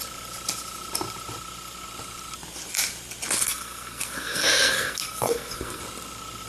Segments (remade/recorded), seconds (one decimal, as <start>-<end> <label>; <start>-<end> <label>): 0.0-3.4 recorded; 3.4-5.8 remade; 5.8-6.5 recorded